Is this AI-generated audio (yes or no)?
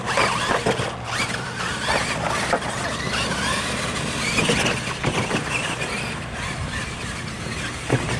no